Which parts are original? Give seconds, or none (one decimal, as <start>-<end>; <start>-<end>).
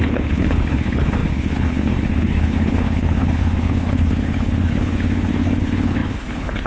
none